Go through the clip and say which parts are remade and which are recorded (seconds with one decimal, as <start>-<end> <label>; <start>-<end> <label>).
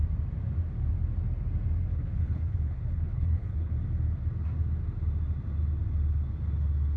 0.0-1.9 recorded; 1.9-3.7 remade; 3.7-7.0 recorded